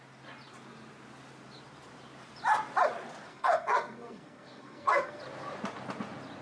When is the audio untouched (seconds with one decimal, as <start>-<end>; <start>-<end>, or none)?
0.0-3.3; 5.2-6.4

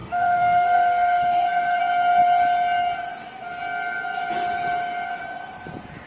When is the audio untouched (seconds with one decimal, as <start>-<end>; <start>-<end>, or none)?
1.8-6.1

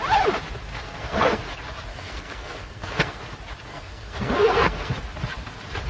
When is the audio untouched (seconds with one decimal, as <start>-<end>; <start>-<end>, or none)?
0.0-0.7; 1.4-1.9; 3.2-3.7; 4.9-5.9

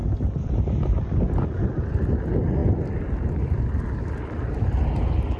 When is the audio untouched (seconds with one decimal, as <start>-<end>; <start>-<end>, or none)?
0.0-5.4

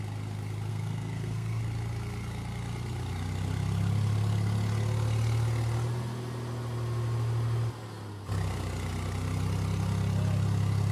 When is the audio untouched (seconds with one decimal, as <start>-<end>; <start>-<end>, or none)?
0.0-0.7; 1.6-10.9

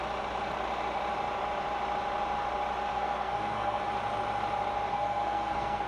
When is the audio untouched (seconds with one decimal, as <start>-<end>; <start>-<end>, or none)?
0.0-2.9; 3.8-4.9